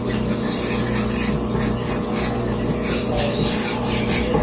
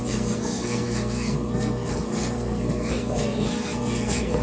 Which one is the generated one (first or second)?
second